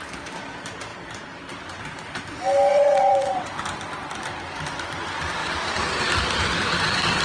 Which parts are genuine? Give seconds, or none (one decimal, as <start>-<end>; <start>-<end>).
0.0-2.7; 3.5-7.2